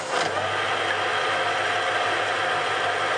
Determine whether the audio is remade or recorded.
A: recorded